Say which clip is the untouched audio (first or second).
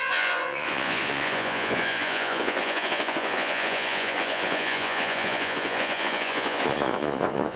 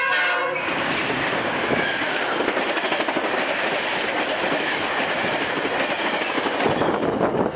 second